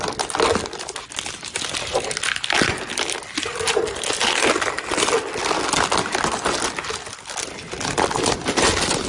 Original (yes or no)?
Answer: yes